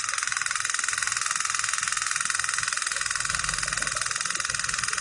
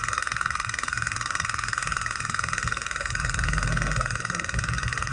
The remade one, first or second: second